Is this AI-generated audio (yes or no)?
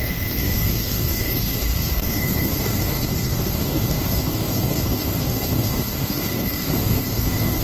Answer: yes